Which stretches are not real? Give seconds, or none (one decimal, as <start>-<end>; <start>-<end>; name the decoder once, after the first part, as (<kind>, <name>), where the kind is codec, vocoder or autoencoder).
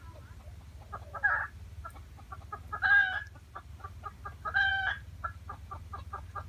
4.7-6.0 (vocoder, BigVGAN v2)